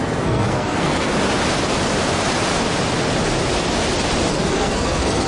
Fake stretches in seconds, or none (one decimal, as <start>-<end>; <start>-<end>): 0.0-1.1; 4.3-5.3